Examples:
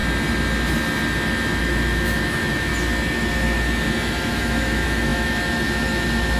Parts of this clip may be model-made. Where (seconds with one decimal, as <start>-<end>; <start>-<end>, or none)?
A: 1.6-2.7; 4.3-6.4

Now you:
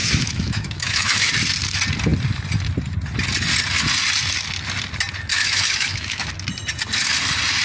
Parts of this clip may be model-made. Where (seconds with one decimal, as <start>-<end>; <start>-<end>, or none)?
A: 0.0-1.3; 5.3-6.3

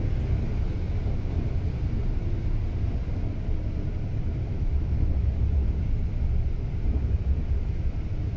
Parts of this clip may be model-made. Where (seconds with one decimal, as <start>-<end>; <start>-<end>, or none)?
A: 4.5-5.3

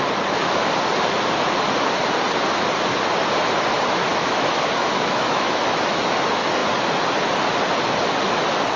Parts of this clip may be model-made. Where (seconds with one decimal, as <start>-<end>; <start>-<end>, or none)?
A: 4.1-6.0

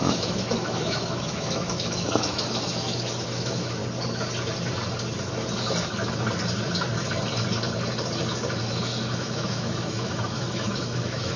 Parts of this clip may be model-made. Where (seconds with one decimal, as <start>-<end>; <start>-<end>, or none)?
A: 0.0-3.8; 8.6-11.4

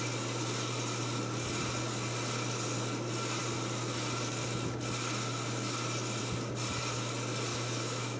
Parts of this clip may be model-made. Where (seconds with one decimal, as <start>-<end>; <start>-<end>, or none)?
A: 7.5-8.2

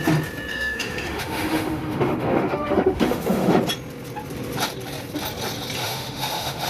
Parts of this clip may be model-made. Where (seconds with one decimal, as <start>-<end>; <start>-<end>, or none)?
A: 0.5-3.6; 5.8-6.7

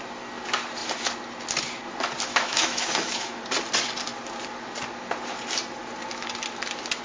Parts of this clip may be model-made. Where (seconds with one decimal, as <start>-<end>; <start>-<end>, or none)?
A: 2.3-3.4